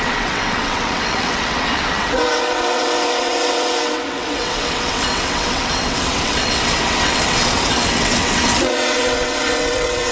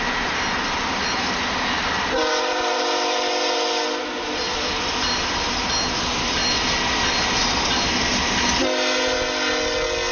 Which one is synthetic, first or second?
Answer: first